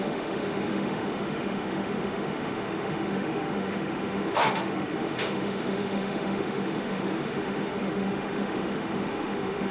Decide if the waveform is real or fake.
fake